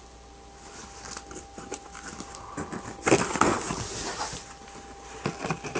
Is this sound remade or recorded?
recorded